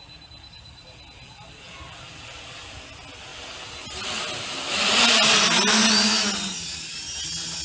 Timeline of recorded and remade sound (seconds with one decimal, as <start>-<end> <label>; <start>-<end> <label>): 0.0-7.6 recorded